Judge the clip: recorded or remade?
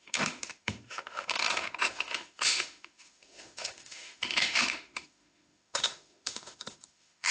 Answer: remade